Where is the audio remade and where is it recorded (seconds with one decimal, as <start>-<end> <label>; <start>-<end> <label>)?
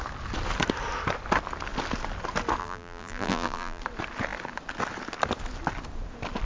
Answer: 0.0-2.6 recorded; 2.6-3.8 remade; 3.8-6.4 recorded